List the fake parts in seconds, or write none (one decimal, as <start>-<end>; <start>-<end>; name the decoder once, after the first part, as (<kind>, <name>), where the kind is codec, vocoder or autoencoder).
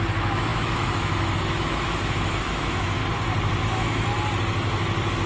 0.0-3.0 (autoencoder, DAC-VAE); 3.6-4.1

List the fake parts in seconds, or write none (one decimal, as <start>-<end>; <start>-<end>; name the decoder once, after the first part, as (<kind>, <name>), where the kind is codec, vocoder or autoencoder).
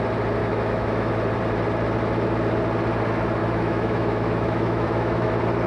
0.4-1.1 (autoencoder, DAC-VAE); 3.4-5.3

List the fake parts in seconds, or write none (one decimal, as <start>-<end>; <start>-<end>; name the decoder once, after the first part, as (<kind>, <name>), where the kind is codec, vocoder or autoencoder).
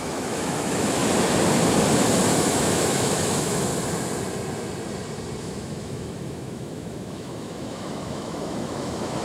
0.0-1.0 (autoencoder, DAC-VAE); 2.5-3.7; 5.4-9.2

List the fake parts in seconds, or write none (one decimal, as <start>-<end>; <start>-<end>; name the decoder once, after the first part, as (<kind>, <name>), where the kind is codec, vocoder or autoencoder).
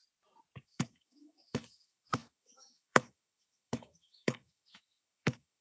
0.6-5.6 (autoencoder, DAC-VAE)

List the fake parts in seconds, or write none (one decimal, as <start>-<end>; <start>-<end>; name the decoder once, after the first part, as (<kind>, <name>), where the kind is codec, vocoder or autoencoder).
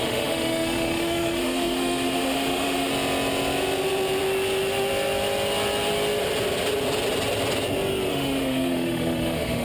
0.0-2.9 (autoencoder, DAC-VAE); 8.1-9.6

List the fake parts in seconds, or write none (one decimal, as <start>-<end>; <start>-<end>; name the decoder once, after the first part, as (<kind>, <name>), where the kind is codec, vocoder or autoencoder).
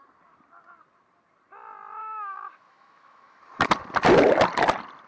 2.0-3.4 (autoencoder, DAC-VAE)